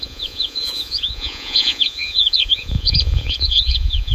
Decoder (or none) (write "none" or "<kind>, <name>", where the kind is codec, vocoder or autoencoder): vocoder, Vocos